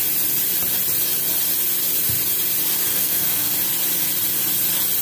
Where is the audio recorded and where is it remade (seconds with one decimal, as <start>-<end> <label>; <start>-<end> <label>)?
0.0-2.9 recorded; 2.9-3.5 remade; 3.5-5.0 recorded